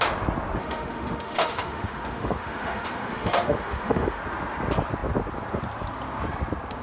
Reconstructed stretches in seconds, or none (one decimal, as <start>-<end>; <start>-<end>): 0.6-4.2